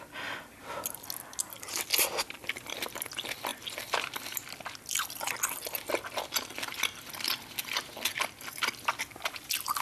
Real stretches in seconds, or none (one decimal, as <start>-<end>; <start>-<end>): 0.0-9.8